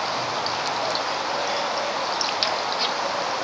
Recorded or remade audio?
recorded